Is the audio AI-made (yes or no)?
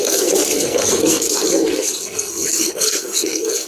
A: yes